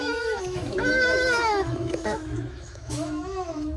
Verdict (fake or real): fake